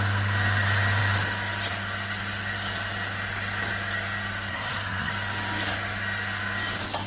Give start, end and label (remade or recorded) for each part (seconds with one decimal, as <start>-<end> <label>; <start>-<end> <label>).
0.0-4.5 recorded; 4.5-5.1 remade; 5.1-7.1 recorded